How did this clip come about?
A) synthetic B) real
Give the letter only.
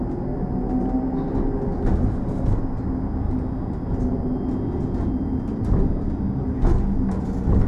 B